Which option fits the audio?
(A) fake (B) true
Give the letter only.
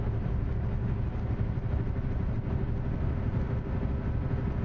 B